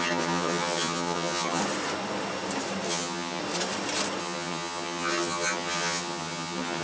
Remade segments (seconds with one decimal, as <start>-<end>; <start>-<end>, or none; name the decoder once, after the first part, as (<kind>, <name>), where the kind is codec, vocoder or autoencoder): 0.0-1.6 (vocoder, HiFi-GAN); 2.9-3.4; 4.2-6.8